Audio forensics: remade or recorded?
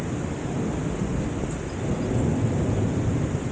recorded